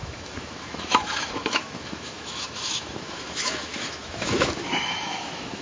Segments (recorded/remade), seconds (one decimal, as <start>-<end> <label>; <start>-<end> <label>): 0.0-5.6 remade